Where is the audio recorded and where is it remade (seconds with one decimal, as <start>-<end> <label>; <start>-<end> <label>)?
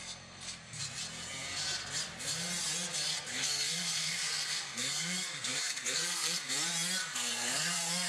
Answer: 0.0-0.8 remade; 0.8-3.1 recorded; 3.1-6.5 remade; 6.5-7.0 recorded; 7.0-8.1 remade